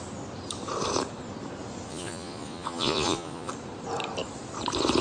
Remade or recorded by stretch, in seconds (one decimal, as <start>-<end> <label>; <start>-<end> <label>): 0.0-1.9 recorded; 1.9-3.5 remade; 3.5-5.0 recorded